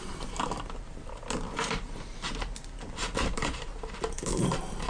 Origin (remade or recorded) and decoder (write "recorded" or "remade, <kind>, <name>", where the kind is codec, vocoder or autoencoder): recorded